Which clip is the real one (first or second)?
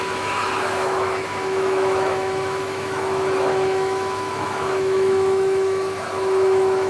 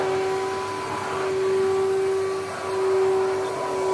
second